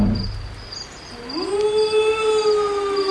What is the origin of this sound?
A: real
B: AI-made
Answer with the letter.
A